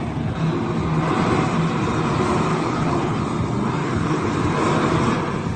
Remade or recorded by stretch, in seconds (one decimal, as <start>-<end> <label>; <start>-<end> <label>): 0.0-2.5 recorded; 2.5-3.2 remade; 3.2-3.8 recorded; 3.8-4.3 remade; 4.3-5.6 recorded